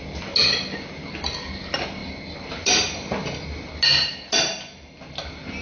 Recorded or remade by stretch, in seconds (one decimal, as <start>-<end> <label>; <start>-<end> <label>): 0.0-5.6 recorded